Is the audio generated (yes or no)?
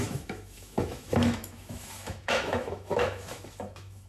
yes